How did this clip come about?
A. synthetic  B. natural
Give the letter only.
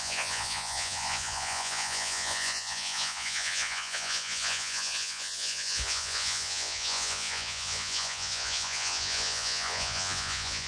A